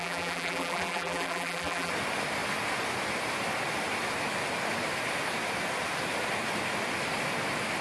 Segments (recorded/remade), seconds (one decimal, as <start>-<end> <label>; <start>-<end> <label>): 0.0-1.9 remade; 1.9-7.8 recorded